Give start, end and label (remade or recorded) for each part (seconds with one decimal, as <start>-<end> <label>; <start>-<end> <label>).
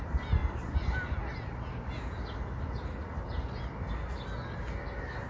0.0-5.3 recorded